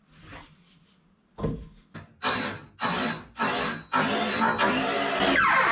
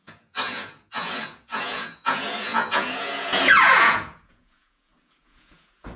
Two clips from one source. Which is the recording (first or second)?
first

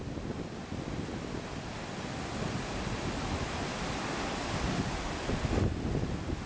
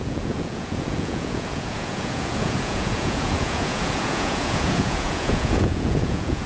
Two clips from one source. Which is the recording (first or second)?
first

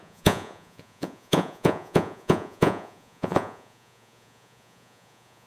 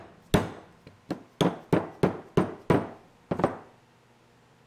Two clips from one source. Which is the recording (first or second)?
second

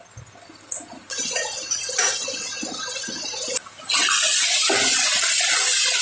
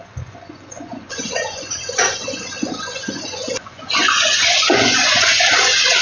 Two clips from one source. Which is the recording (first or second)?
first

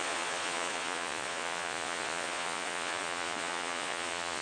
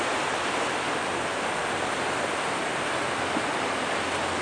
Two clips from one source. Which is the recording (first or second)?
second